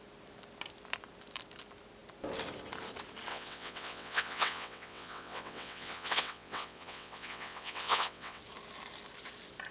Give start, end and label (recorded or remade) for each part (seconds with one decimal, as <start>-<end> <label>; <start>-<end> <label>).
0.0-3.3 recorded; 3.3-8.4 remade; 8.4-9.7 recorded